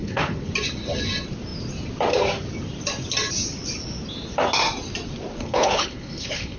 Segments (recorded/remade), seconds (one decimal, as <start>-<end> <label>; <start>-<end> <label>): 0.0-0.5 remade; 0.5-5.4 recorded; 5.4-6.6 remade